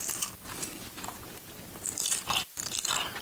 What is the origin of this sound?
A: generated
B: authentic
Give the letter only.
B